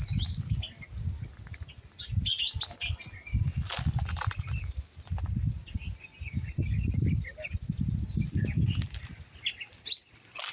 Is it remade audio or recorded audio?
recorded